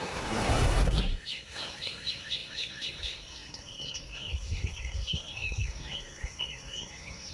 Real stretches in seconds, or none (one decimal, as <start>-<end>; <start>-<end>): none